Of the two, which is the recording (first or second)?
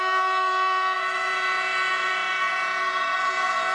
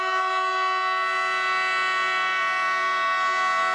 second